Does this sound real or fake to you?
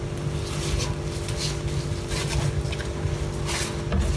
real